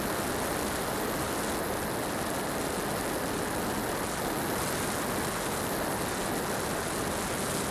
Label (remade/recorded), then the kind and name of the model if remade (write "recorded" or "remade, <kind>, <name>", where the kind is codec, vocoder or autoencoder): recorded